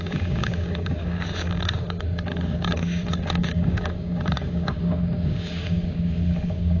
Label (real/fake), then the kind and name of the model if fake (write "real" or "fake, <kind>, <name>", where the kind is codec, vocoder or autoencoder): fake, codec, DAC